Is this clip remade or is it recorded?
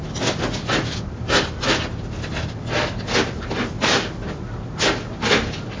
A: recorded